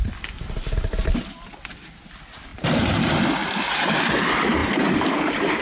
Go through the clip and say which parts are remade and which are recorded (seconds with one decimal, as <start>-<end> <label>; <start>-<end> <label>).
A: 0.0-4.6 recorded; 4.6-5.6 remade